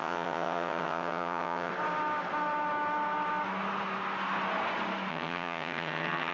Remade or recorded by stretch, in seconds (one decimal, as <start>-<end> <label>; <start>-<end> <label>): 0.0-1.7 remade; 1.7-5.1 recorded; 5.1-6.3 remade